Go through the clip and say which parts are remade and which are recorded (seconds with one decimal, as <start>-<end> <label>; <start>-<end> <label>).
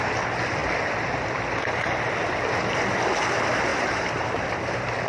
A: 0.0-3.7 recorded; 3.7-4.4 remade; 4.4-5.1 recorded